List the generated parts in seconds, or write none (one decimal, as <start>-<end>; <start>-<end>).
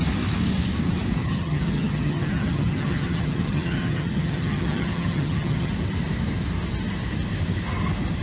1.2-5.7